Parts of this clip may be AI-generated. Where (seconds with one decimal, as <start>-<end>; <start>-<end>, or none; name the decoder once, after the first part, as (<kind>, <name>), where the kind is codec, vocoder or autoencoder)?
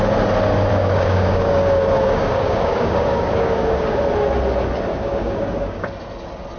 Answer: 0.7-4.0 (codec, DAC); 4.9-5.9